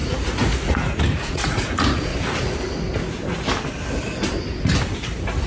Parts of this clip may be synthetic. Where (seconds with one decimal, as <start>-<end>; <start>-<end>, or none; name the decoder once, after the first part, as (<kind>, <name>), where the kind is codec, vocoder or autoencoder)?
0.0-2.1 (vocoder, Vocos)